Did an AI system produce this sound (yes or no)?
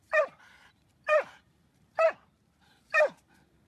yes